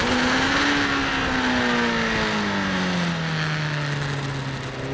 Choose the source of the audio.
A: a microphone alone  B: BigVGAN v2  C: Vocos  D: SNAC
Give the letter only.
A